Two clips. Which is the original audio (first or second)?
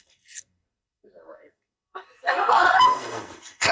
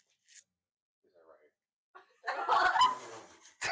second